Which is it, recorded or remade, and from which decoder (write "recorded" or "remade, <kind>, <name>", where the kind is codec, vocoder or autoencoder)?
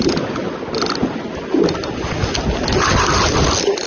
recorded